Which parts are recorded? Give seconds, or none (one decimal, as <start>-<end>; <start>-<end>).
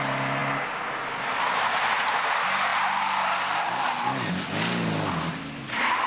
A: 0.0-6.1